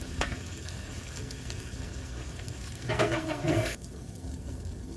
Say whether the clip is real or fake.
fake